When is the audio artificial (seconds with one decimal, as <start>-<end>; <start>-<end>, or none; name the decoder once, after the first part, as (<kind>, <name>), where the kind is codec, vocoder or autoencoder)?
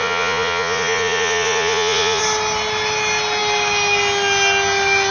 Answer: 0.0-2.2 (vocoder, Vocos)